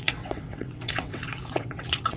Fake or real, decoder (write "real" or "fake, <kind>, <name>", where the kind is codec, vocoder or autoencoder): fake, vocoder, WaveNeXt